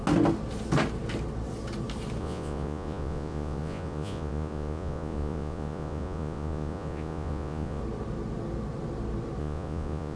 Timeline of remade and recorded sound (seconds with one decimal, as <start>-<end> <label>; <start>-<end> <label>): 0.0-2.2 recorded; 2.2-7.8 remade; 7.8-9.4 recorded; 9.4-10.2 remade